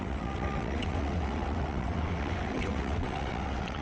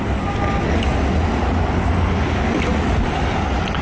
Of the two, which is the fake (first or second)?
first